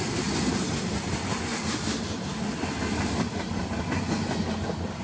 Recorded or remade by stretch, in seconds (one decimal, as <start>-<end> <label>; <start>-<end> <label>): 0.0-5.0 recorded